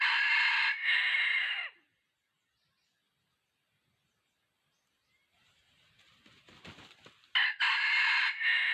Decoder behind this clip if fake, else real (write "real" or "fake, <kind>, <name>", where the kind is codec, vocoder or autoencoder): real